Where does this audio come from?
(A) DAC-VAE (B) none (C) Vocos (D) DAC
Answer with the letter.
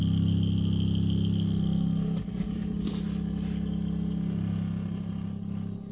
B